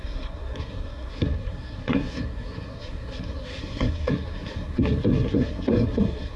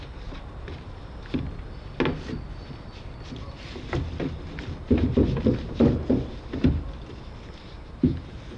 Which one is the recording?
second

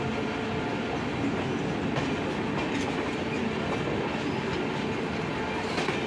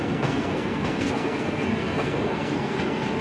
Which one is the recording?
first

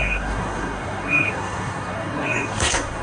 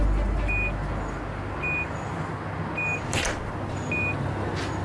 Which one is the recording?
second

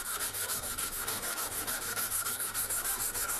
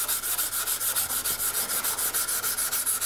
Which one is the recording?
second